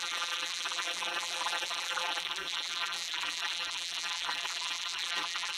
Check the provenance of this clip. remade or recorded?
remade